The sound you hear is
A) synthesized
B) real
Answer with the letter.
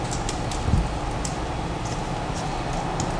B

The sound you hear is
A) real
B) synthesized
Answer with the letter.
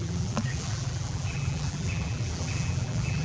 B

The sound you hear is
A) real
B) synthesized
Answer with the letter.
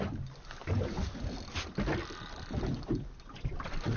A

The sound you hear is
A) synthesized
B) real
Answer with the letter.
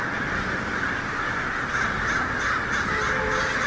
B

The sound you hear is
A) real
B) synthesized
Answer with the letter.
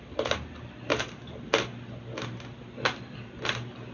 A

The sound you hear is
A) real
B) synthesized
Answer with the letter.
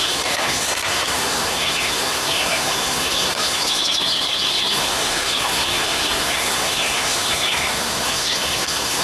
B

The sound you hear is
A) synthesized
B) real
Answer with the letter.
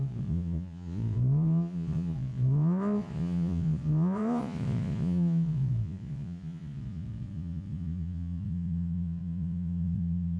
A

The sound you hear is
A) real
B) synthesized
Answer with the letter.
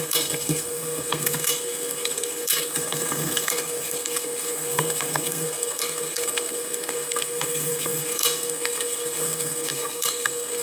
B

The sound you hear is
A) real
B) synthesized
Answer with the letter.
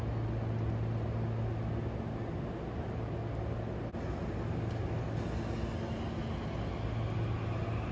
A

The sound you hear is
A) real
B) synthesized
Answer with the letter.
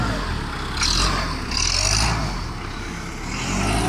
A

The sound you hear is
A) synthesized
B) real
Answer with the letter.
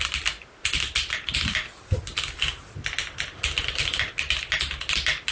B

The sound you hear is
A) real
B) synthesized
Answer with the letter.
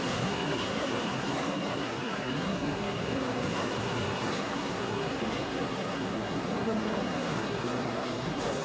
B